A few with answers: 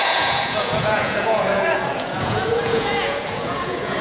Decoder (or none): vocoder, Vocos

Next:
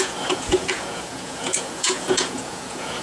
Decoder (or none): vocoder, Vocos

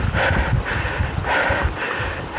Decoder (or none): none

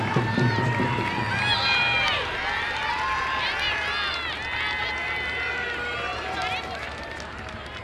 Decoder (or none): none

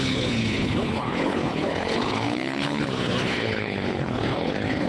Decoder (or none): codec, HILCodec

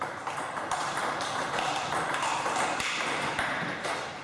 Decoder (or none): vocoder, BigVGAN v2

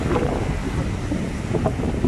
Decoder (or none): none